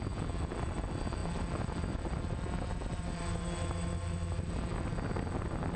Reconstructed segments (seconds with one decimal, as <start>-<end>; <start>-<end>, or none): none